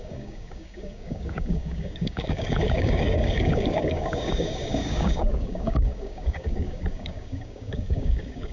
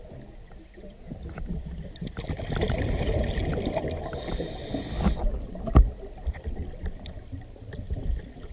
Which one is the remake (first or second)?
first